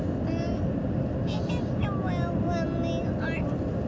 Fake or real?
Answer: real